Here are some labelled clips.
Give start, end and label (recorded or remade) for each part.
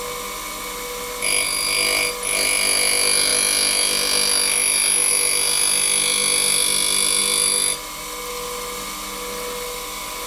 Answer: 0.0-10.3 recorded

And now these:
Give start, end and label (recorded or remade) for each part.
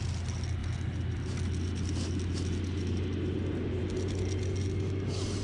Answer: 0.0-5.4 recorded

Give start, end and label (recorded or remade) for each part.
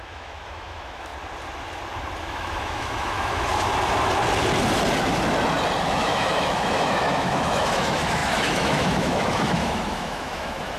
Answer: 0.0-1.1 remade; 1.1-2.2 recorded; 2.2-3.5 remade; 3.5-5.8 recorded; 5.8-10.8 remade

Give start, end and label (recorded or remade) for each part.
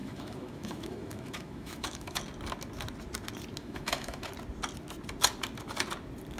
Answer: 0.0-2.2 remade; 2.2-3.6 recorded; 3.6-4.3 remade; 4.3-6.4 recorded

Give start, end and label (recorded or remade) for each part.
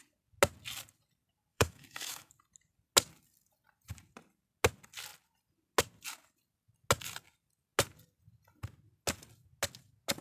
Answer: 0.0-1.5 recorded; 1.5-2.3 remade; 2.3-10.2 recorded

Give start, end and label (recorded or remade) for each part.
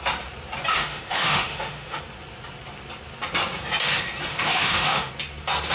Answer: 0.0-0.7 recorded; 0.7-2.0 remade; 2.0-4.3 recorded; 4.3-5.1 remade; 5.1-5.7 recorded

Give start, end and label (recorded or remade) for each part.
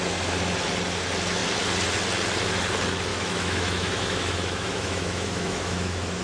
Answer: 0.0-3.1 recorded; 3.1-6.2 remade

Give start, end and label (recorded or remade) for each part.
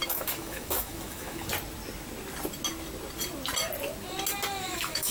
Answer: 0.0-1.5 remade; 1.5-4.6 recorded; 4.6-5.1 remade